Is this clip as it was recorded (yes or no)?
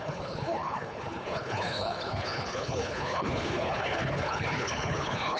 no